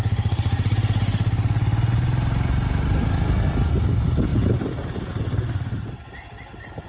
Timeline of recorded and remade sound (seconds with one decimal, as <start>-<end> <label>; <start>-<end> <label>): 0.0-6.9 recorded